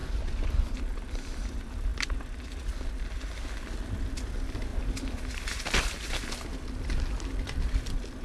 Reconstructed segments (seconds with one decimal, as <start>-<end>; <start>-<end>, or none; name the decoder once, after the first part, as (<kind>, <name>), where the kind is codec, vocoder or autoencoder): none